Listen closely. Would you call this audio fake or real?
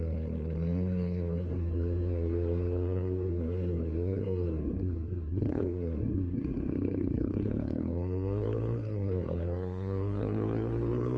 fake